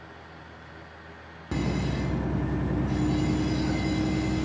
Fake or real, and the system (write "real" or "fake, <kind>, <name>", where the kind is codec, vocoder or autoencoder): real